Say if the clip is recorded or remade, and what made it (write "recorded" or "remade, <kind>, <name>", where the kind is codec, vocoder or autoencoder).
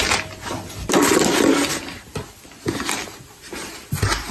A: recorded